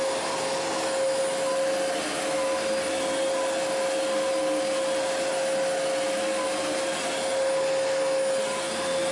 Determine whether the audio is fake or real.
real